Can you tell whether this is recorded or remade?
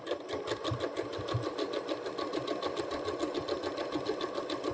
recorded